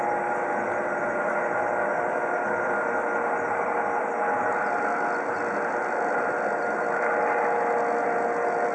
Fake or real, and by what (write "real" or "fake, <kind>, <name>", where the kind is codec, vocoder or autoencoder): real